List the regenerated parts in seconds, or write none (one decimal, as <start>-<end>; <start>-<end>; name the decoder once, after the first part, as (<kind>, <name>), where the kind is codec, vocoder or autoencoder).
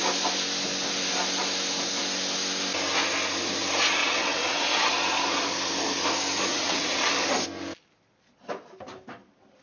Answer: 4.0-4.9 (vocoder, WaveNeXt); 6.5-7.1